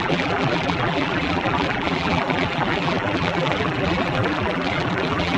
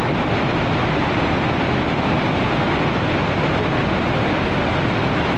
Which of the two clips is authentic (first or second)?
second